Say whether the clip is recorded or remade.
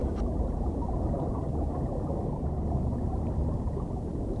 remade